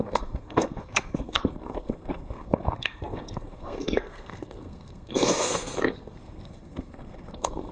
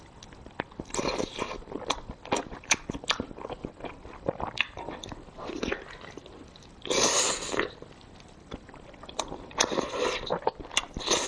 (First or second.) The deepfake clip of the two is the first